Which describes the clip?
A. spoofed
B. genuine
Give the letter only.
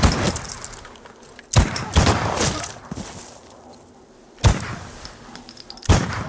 B